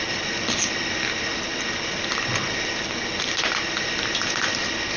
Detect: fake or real real